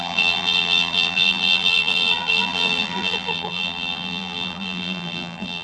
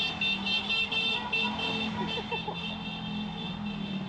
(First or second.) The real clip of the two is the second